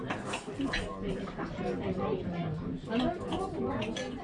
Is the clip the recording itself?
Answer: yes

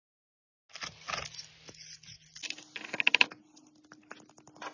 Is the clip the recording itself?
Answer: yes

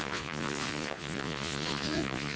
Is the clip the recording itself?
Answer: no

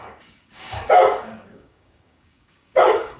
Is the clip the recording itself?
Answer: no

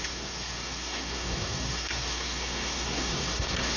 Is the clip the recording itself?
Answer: no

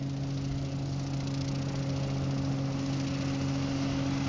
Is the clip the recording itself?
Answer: yes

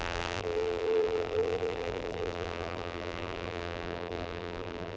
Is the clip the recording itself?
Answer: no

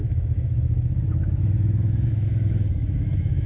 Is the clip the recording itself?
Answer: no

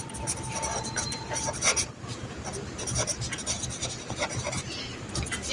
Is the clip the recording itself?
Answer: no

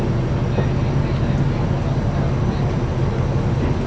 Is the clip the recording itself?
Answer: yes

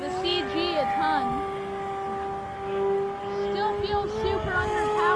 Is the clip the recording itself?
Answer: yes